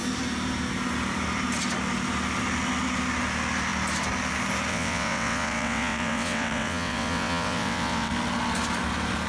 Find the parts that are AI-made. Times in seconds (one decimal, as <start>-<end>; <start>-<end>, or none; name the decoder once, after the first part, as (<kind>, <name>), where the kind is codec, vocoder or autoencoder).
4.7-8.1 (vocoder, WaveNeXt)